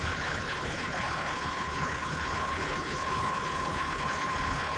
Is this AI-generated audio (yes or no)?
yes